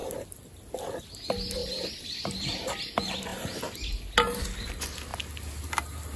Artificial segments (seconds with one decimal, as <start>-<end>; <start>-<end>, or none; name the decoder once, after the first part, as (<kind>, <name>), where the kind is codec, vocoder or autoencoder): none